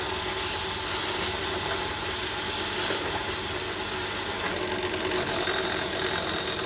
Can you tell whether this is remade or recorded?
recorded